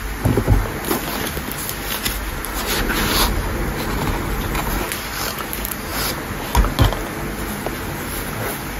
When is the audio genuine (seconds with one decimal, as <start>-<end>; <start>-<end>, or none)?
0.0-8.8

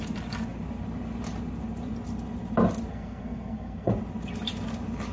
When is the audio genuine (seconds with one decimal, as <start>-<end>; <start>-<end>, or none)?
0.0-2.9; 3.9-5.1

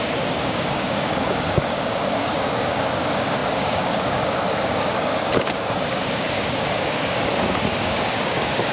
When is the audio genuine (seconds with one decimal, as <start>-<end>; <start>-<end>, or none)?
none

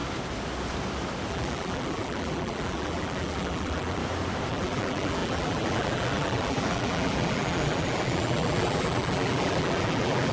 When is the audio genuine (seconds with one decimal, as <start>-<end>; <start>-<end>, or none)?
0.0-1.3; 4.0-4.5